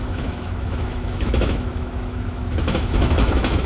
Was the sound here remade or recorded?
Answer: remade